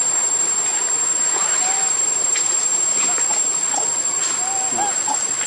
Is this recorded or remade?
recorded